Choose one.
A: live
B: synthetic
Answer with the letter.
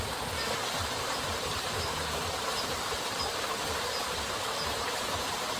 B